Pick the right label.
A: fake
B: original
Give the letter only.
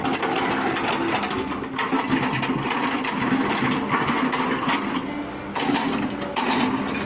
B